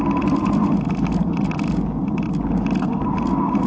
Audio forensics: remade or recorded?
recorded